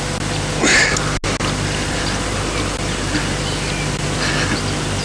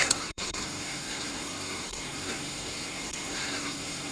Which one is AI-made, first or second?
second